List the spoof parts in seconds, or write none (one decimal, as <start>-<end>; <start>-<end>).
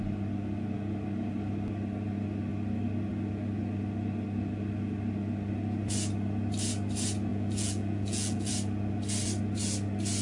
7.3-8.5